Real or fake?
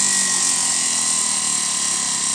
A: real